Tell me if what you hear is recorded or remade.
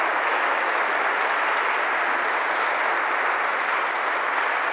recorded